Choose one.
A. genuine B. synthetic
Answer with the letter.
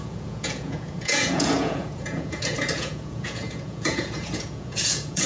B